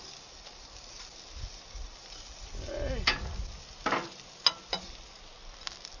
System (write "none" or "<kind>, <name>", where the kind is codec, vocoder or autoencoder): none